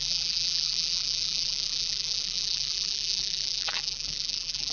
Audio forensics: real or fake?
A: fake